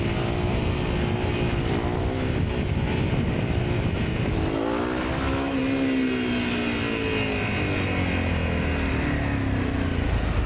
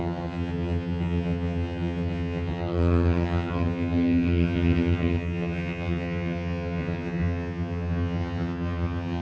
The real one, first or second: first